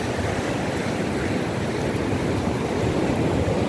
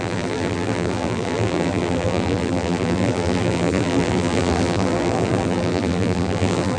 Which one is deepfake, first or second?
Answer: second